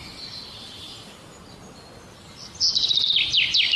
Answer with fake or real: real